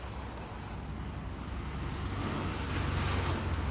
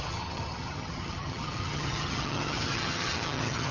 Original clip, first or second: first